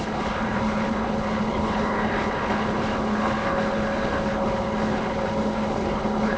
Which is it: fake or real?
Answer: fake